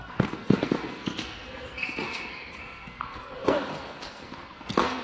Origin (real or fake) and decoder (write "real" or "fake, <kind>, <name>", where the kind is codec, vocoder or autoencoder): fake, codec, SNAC